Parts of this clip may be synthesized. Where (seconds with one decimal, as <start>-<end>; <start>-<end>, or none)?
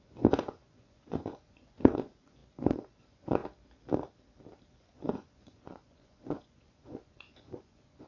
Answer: 0.0-3.4; 4.7-8.1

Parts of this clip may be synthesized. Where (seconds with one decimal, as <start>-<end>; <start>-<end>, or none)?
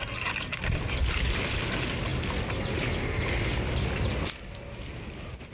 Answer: none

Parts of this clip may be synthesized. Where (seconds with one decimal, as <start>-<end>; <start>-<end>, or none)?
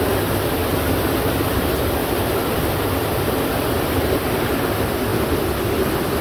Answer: none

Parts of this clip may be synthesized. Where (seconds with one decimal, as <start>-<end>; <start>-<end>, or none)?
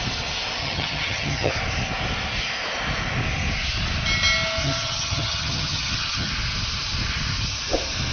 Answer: 0.6-1.5; 4.6-6.3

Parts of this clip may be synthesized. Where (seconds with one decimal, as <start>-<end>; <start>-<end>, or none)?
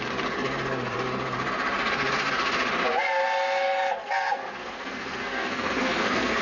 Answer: 4.0-6.4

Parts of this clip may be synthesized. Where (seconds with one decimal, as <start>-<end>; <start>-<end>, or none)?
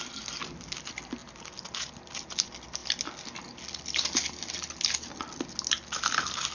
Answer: none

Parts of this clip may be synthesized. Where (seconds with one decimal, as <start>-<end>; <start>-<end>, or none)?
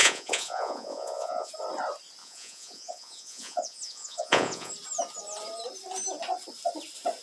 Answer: 0.0-1.5; 2.2-4.7